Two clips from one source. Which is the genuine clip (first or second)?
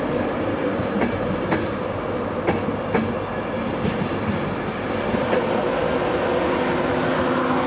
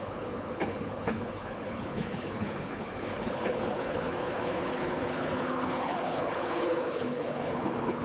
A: first